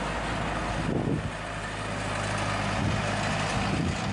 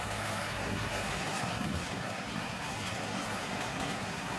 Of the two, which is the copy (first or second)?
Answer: second